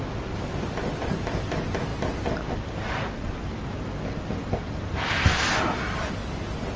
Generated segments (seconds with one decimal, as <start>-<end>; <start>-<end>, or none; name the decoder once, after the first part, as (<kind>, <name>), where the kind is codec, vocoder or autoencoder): none